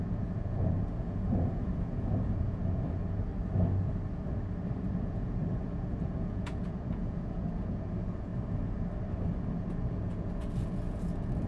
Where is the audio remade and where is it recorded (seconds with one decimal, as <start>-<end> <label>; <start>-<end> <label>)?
0.0-3.3 remade; 3.3-5.0 recorded; 5.0-8.3 remade; 8.3-9.5 recorded; 9.5-11.5 remade

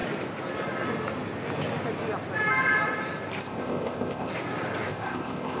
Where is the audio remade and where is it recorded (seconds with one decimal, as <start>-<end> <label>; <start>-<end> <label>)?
0.0-3.4 recorded; 3.4-4.3 remade; 4.3-4.9 recorded; 4.9-5.6 remade

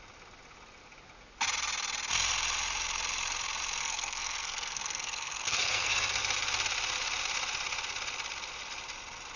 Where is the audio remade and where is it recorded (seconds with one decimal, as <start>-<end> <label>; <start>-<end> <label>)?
0.0-3.8 recorded; 3.8-6.2 remade; 6.2-9.4 recorded